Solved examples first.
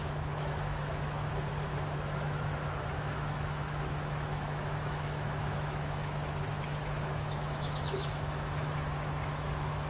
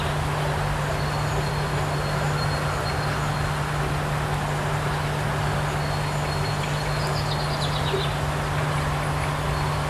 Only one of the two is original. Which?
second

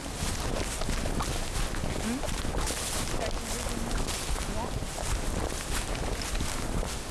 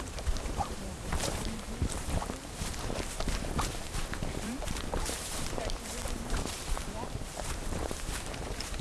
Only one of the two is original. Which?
first